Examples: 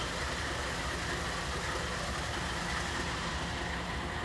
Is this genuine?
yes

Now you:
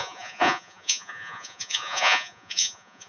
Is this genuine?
no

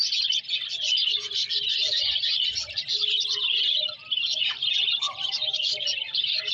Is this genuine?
yes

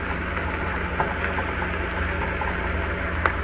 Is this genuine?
yes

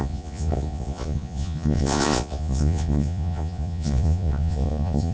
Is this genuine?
no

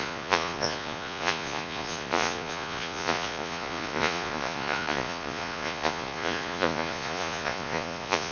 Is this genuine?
no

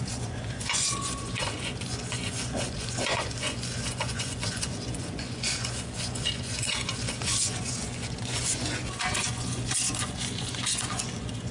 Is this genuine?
no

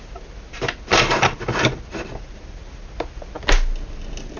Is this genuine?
yes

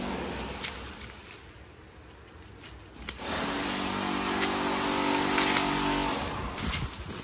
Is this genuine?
yes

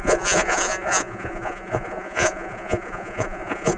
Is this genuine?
no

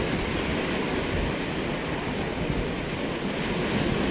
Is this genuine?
yes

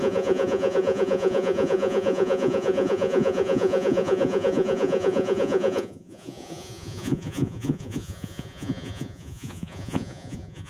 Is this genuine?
no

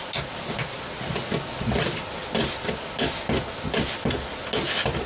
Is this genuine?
yes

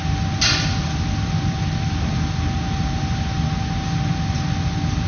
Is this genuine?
yes